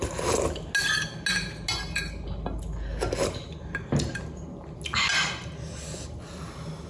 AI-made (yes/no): no